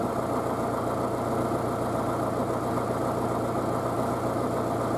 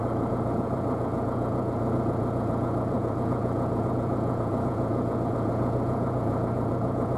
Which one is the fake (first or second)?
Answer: second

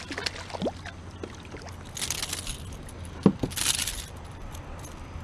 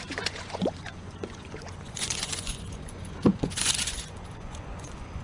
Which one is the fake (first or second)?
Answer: second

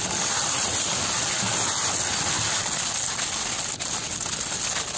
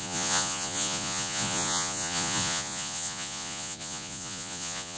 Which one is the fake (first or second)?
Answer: second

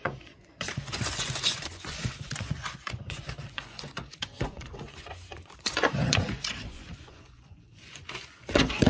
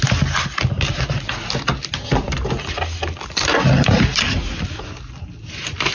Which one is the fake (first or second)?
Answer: first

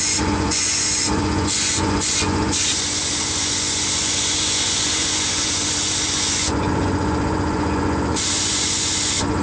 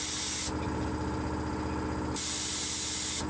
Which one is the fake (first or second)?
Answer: first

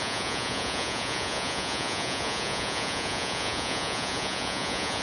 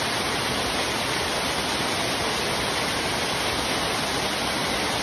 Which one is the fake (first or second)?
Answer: first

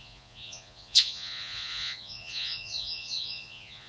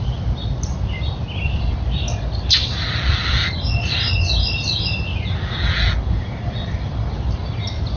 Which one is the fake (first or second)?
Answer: first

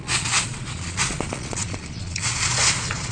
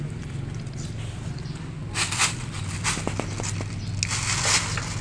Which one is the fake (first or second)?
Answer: first